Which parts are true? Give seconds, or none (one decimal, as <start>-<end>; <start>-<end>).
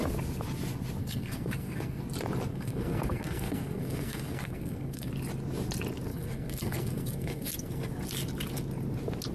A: 0.0-1.0; 2.0-2.5; 5.1-6.1; 7.9-9.3